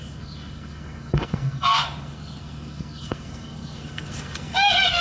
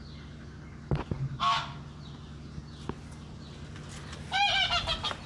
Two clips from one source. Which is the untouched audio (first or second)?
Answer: second